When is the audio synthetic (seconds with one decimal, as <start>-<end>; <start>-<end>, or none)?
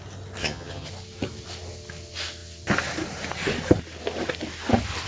0.4-0.9